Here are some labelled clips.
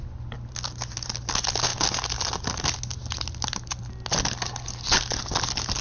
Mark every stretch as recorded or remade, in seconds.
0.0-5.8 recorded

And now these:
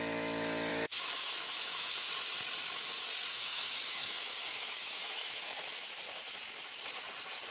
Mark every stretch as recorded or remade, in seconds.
0.0-0.7 recorded; 0.7-2.1 remade; 2.1-3.3 recorded; 3.3-5.8 remade; 5.8-7.5 recorded

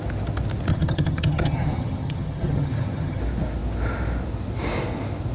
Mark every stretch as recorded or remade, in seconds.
0.0-0.7 recorded; 0.7-3.2 remade; 3.2-5.3 recorded